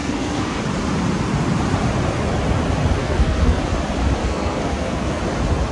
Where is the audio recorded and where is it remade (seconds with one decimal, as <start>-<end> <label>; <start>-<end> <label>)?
0.0-0.6 remade; 0.6-3.0 recorded; 3.0-3.6 remade; 3.6-4.2 recorded; 4.2-5.2 remade; 5.2-5.7 recorded